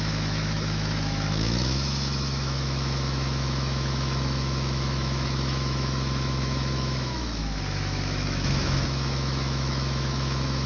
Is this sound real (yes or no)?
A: no